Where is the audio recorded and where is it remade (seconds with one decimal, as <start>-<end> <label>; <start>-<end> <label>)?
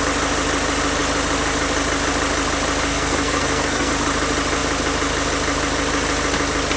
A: 0.0-2.9 recorded; 2.9-3.9 remade; 3.9-6.8 recorded